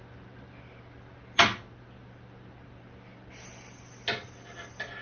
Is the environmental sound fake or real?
real